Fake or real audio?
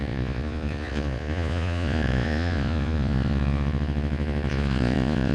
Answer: fake